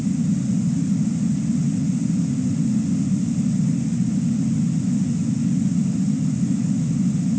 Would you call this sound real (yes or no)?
yes